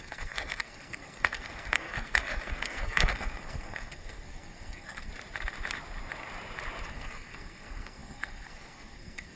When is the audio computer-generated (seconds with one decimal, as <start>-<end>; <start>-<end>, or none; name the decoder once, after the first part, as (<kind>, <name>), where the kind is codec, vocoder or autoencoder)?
0.0-5.1 (codec, SNAC); 6.9-9.4